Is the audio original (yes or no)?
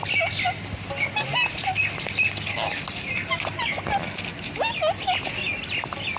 yes